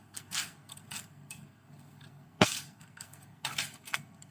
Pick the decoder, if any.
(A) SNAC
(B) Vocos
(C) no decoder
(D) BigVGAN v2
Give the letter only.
A